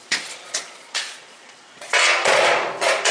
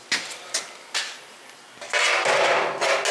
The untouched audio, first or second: second